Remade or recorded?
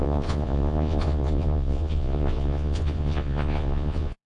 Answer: remade